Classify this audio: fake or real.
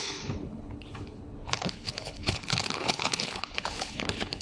fake